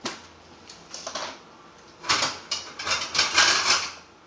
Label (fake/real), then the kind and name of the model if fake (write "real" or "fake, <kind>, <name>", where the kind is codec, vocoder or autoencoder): fake, vocoder, BigVGAN v2